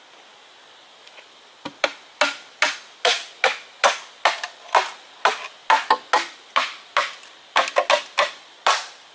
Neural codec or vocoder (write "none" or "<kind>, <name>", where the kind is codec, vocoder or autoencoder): none